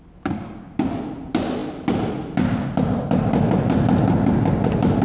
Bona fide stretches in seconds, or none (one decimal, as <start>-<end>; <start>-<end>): 0.0-5.0